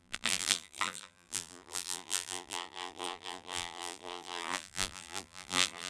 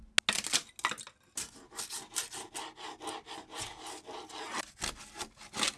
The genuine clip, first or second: second